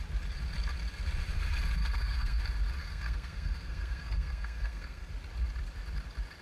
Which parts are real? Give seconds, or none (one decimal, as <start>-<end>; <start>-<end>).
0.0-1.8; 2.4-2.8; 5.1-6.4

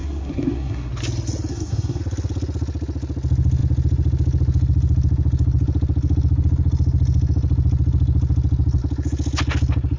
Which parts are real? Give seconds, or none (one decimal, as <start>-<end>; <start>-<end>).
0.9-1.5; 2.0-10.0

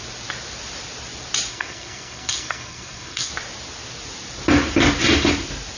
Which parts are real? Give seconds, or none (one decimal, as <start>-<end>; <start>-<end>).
0.0-1.5; 3.3-5.8